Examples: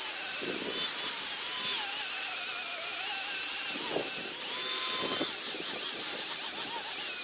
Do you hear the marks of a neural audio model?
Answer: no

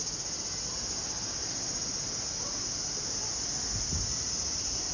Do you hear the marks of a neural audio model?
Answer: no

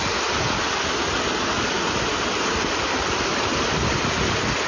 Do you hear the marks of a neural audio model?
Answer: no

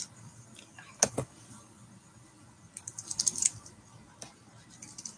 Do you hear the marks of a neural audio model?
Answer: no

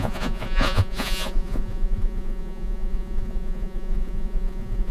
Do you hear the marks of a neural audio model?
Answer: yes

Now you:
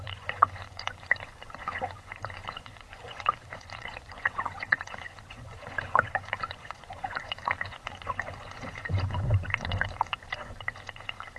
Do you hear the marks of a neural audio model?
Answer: yes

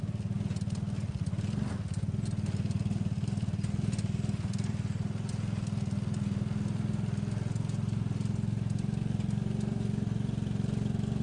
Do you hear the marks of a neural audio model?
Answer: no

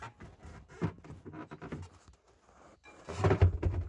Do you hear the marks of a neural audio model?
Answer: no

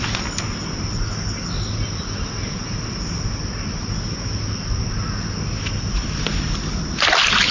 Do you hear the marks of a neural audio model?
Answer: no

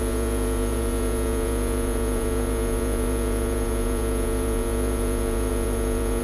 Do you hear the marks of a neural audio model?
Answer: yes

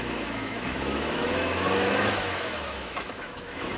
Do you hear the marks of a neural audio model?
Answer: yes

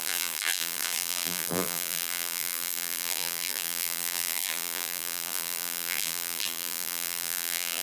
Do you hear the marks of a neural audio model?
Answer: yes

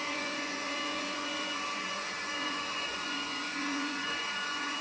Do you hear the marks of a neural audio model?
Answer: yes